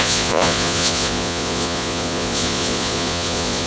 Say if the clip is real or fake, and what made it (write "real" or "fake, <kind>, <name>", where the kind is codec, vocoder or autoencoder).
fake, vocoder, Vocos